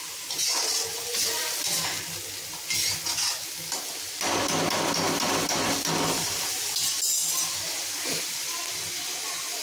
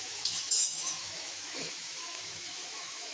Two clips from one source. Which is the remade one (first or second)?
second